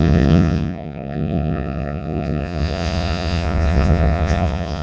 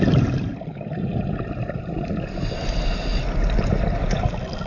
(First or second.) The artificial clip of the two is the first